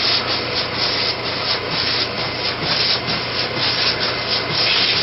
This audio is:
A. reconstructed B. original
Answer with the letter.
B